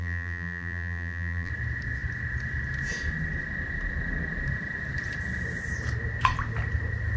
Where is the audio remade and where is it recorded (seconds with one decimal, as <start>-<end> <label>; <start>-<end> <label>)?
0.0-1.5 remade; 1.5-7.2 recorded